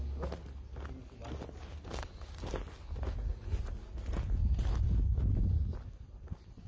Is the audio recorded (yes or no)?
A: yes